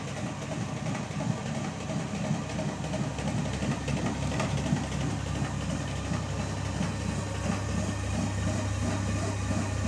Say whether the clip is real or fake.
real